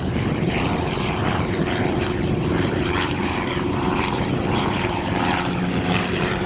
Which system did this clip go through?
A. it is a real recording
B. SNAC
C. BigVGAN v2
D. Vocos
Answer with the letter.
C